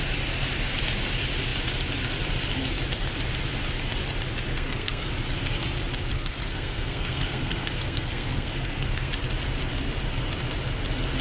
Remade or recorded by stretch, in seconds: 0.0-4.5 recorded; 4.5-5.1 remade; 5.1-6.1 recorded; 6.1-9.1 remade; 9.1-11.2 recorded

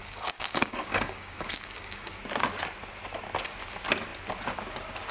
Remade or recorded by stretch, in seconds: 0.0-2.2 remade; 2.2-5.1 recorded

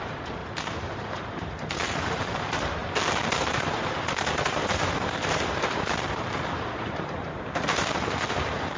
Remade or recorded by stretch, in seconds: 0.0-0.4 remade; 0.4-1.2 recorded; 1.2-2.8 remade; 2.8-3.3 recorded; 3.3-8.8 remade

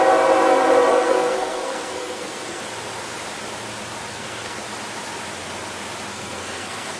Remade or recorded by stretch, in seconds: 0.0-0.9 recorded; 0.9-2.6 remade; 2.6-4.1 recorded; 4.1-4.6 remade; 4.6-6.1 recorded; 6.1-7.0 remade

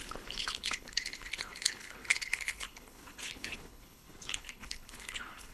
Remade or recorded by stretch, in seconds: 0.0-5.5 remade

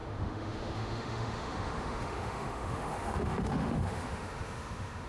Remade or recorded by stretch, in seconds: 0.0-5.1 remade